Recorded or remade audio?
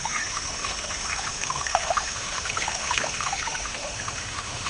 remade